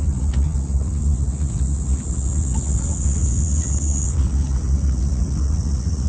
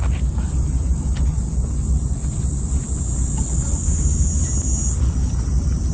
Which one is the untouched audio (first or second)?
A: second